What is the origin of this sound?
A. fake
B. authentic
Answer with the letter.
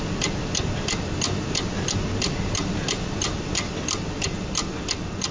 B